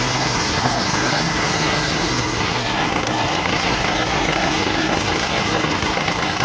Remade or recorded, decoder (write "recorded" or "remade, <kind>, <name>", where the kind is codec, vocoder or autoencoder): remade, codec, SNAC